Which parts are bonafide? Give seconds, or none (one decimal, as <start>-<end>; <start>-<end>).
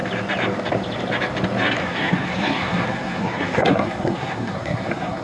0.0-1.8